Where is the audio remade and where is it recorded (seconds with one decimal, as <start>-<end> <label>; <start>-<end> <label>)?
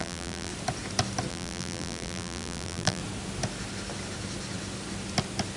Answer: 0.0-0.5 remade; 0.5-1.3 recorded; 1.3-3.0 remade; 3.0-5.6 recorded